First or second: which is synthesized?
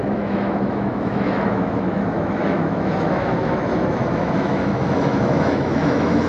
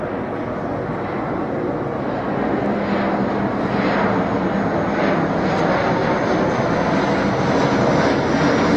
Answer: first